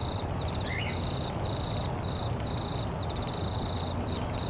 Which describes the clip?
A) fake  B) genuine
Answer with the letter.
B